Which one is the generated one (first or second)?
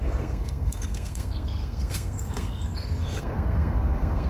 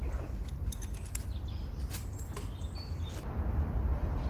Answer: first